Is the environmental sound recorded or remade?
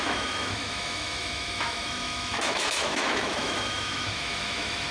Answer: remade